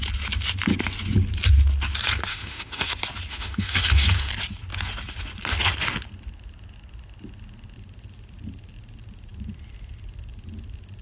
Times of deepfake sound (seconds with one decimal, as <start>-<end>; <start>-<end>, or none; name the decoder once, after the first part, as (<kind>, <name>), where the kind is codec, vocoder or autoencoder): 2.3-2.9 (autoencoder, DAC-VAE); 3.3-4.3